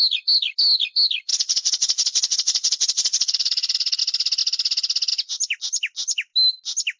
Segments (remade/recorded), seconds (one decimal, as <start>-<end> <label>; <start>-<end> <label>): 0.0-1.3 recorded; 1.3-4.0 remade; 4.0-7.0 recorded